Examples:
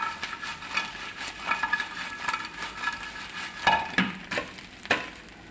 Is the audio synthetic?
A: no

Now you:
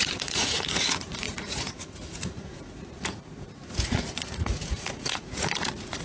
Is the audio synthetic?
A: yes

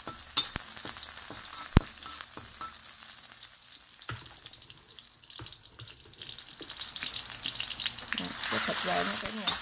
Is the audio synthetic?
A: no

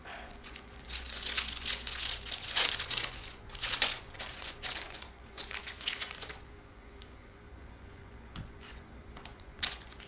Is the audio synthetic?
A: yes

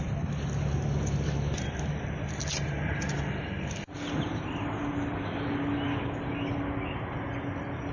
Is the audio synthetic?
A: no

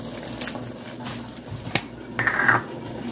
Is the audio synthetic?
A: no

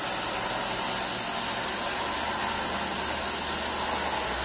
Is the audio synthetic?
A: no